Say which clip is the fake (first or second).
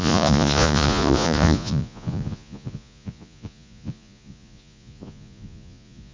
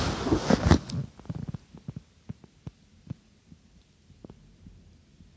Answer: first